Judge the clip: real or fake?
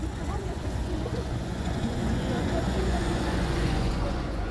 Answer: fake